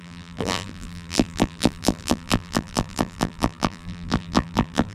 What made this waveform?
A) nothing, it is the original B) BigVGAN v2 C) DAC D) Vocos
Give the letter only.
B